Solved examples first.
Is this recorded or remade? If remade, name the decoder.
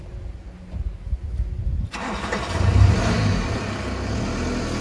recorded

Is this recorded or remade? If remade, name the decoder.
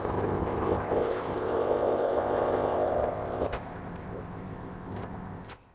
remade, codec, ZipCodec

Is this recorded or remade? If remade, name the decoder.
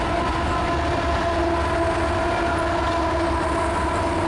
recorded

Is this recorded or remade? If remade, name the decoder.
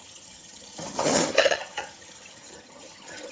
remade, vocoder, HiFi-GAN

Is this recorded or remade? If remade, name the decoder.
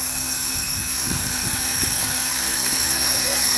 remade, codec, SNAC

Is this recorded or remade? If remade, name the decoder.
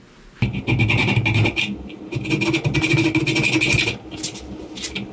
recorded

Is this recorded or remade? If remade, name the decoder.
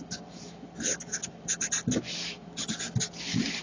recorded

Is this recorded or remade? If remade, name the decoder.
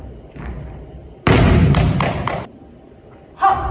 recorded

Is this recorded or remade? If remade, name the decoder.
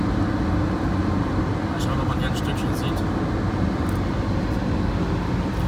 recorded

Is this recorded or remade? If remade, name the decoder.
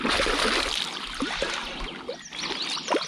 recorded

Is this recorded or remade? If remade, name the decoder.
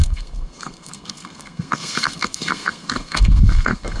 remade, codec, SNAC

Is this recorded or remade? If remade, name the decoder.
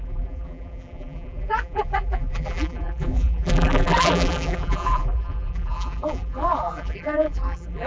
remade, vocoder, BigVGAN v2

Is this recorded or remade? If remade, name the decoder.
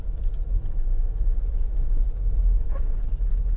recorded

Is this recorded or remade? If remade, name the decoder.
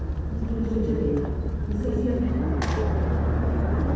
recorded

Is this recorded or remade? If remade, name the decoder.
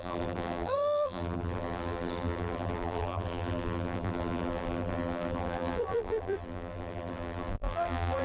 remade, vocoder, BigVGAN v2